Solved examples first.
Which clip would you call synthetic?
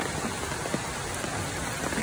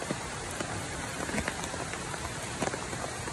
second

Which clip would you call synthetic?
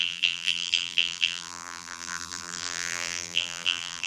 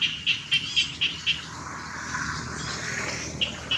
first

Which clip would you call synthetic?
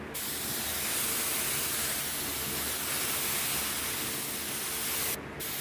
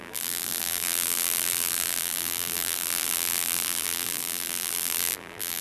second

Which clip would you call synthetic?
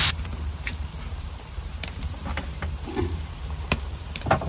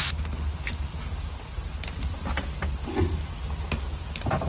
first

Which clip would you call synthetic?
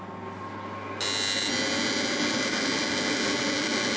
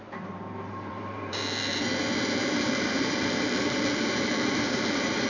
second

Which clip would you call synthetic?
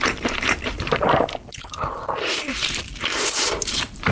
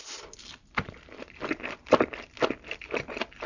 first